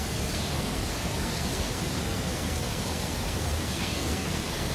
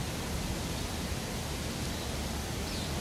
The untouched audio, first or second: second